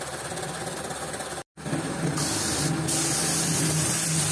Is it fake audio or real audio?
real